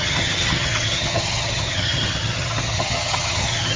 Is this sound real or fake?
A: fake